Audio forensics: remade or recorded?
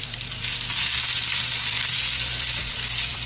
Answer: remade